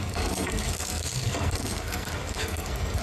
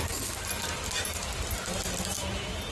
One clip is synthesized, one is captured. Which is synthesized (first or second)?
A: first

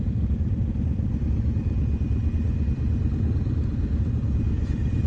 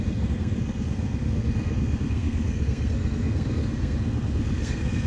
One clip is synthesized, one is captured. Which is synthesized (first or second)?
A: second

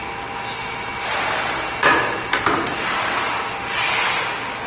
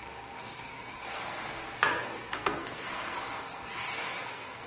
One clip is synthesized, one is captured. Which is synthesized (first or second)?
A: second